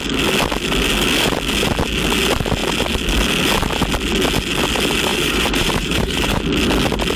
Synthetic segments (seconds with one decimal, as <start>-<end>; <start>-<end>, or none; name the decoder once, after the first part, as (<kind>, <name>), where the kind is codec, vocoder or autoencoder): 5.1-6.4 (vocoder, BigVGAN v2)